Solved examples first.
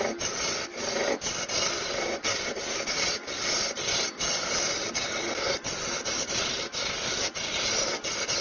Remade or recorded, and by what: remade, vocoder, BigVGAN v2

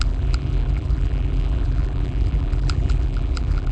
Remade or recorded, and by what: remade, vocoder, BigVGAN v2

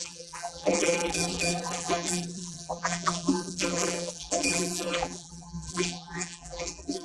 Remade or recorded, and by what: remade, vocoder, BigVGAN v2